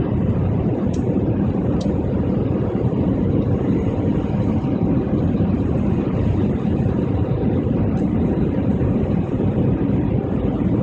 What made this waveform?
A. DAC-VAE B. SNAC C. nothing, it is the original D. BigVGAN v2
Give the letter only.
D